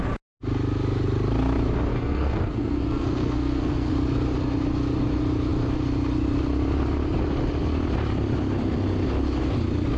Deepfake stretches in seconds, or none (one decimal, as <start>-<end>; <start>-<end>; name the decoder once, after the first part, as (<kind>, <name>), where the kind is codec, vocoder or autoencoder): 1.9-3.9 (codec, SNAC)